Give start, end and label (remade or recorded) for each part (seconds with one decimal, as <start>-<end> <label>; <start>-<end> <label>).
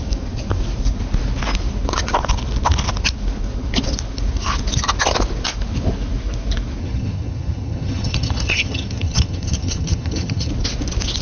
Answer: 0.0-6.8 recorded; 6.8-10.5 remade; 10.5-11.2 recorded